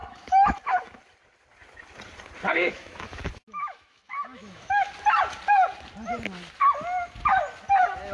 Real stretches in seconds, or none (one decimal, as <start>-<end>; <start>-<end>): 1.0-2.6; 4.9-8.1